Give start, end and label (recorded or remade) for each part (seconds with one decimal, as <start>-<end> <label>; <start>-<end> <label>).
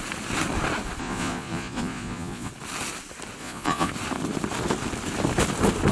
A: 0.0-1.0 recorded; 1.0-2.5 remade; 2.5-3.4 recorded; 3.4-3.9 remade; 3.9-5.9 recorded